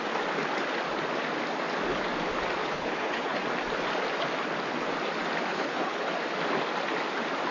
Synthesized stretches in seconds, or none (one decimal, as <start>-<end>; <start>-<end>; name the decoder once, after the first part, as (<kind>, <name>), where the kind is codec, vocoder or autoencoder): 2.6-3.4 (codec, HILCodec); 5.5-6.1